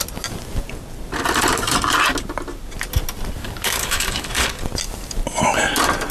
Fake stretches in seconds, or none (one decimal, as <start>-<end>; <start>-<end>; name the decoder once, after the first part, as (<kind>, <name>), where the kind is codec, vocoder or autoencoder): 3.4-4.6 (codec, DAC)